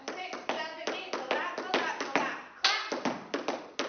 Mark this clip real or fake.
real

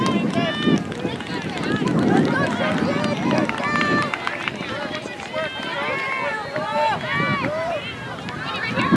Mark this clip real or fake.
real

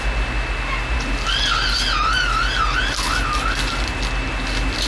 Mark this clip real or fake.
real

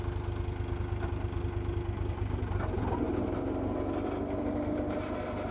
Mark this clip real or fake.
real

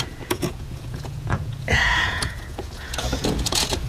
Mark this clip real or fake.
fake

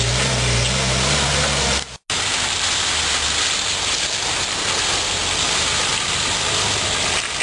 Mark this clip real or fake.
real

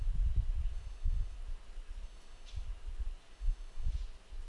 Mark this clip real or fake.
real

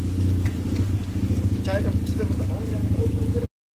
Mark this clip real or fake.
fake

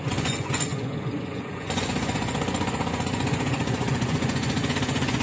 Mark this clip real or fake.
fake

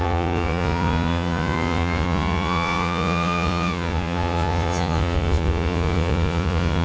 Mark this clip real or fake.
fake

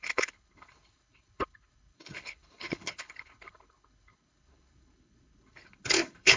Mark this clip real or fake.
fake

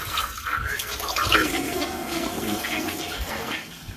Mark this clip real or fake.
fake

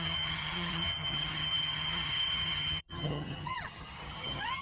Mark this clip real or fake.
fake